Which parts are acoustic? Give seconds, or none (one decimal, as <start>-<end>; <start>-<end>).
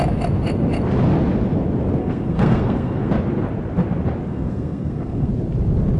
0.0-2.0; 3.1-4.3; 5.3-6.0